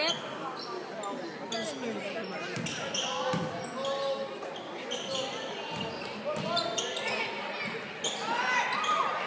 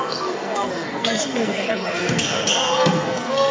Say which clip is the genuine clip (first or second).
first